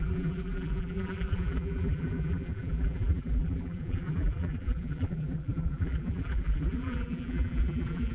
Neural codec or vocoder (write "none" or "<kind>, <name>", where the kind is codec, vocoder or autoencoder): vocoder, BigVGAN v2